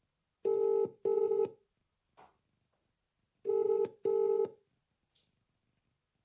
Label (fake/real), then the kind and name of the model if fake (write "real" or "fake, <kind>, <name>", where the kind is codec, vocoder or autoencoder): real